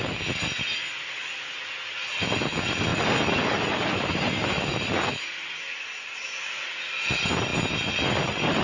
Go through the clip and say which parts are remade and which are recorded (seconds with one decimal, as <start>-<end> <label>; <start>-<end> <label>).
0.0-8.6 recorded